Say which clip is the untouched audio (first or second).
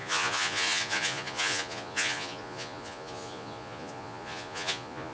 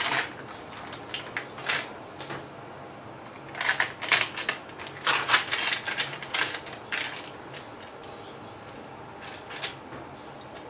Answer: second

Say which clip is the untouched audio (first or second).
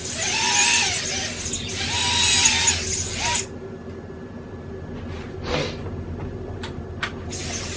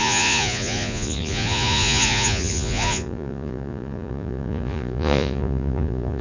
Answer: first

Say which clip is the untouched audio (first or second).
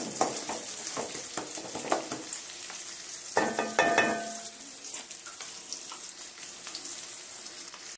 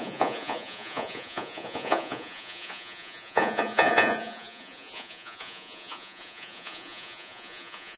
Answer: first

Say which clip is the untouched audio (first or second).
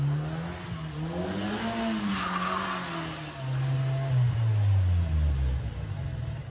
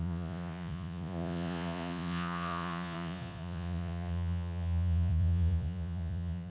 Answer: first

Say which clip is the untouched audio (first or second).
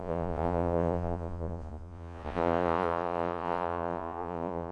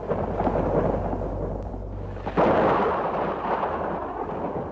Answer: second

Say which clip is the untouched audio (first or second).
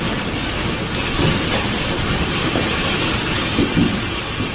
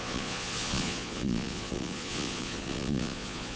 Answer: first